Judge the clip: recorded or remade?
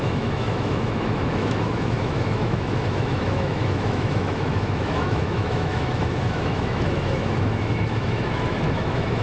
remade